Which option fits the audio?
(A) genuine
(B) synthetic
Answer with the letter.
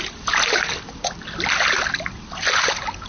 A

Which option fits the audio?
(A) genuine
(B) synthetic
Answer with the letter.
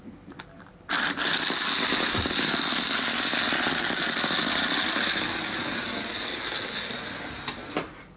A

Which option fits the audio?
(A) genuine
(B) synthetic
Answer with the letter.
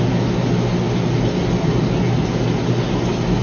A